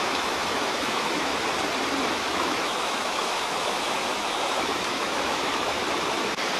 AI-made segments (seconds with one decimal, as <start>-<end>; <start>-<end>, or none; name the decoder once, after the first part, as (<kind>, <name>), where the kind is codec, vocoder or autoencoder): 0.0-1.3 (autoencoder, DAC-VAE); 2.1-5.8